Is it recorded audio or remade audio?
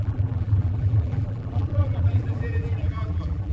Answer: remade